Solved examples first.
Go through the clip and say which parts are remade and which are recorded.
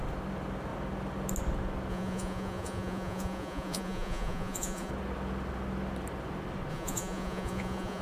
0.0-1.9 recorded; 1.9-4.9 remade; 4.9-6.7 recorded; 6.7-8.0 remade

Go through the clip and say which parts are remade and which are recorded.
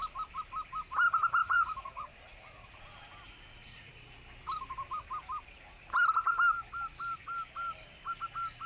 0.0-1.4 recorded; 1.4-3.9 remade; 3.9-8.7 recorded